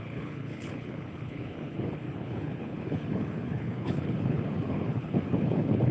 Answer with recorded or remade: remade